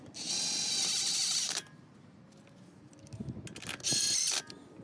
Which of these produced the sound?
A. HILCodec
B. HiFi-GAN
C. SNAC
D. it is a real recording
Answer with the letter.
D